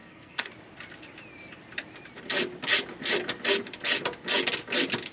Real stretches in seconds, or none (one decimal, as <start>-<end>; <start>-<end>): 0.5-5.1